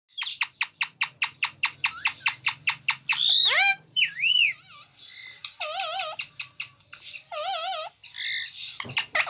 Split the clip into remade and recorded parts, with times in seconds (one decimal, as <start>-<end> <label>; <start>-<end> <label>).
0.0-3.1 recorded; 3.1-4.6 remade; 4.6-8.0 recorded; 8.0-9.3 remade